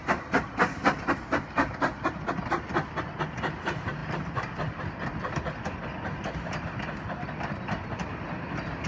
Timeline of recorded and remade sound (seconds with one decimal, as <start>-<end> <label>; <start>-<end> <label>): 0.0-8.9 recorded